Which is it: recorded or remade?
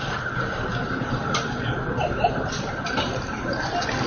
recorded